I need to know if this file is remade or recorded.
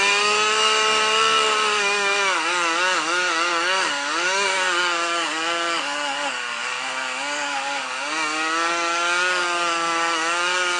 remade